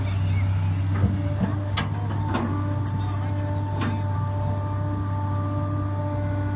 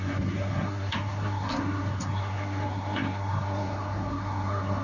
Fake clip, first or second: second